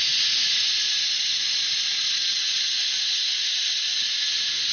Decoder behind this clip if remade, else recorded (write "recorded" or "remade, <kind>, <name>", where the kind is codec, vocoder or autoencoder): recorded